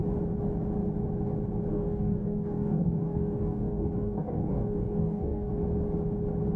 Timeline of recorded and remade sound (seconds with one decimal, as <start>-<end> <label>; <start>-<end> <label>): 0.0-1.7 recorded; 1.7-5.5 remade; 5.5-6.6 recorded